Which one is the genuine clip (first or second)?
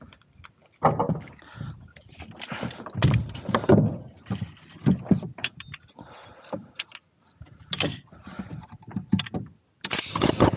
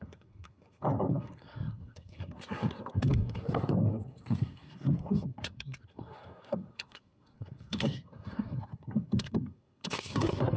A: first